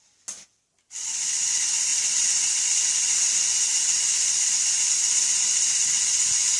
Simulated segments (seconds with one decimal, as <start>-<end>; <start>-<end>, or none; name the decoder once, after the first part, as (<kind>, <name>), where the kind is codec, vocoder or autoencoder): none